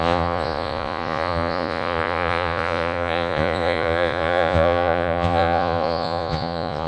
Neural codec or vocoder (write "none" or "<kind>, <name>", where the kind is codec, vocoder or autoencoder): vocoder, Vocos